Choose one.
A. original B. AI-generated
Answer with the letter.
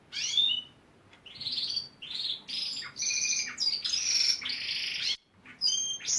A